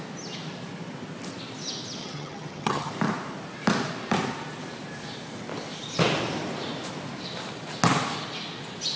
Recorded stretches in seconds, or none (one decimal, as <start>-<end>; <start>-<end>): 0.0-2.0; 2.9-9.0